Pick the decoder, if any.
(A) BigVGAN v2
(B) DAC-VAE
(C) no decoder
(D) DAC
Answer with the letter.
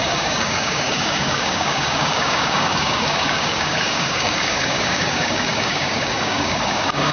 D